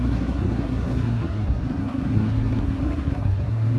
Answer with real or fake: fake